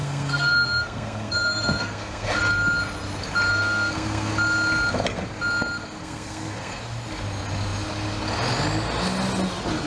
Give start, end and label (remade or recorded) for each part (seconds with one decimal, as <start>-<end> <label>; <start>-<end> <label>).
0.0-2.4 remade; 2.4-3.5 recorded; 3.5-4.3 remade; 4.3-6.0 recorded; 6.0-6.8 remade; 6.8-9.9 recorded